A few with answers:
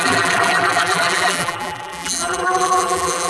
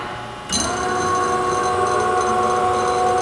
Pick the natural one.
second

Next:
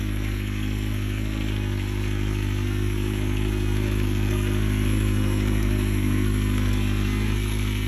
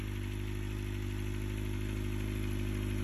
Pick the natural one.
second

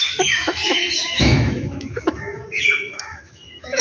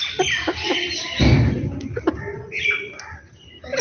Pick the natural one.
second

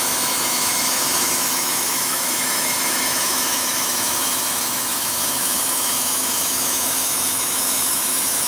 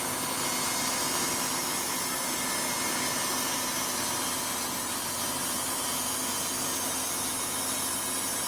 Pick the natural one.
second